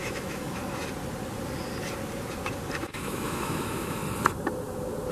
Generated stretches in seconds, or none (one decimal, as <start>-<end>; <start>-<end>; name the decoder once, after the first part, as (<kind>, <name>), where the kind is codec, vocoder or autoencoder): 0.0-0.6 (autoencoder, DAC-VAE); 2.8-4.0